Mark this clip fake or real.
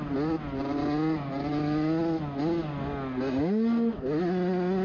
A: real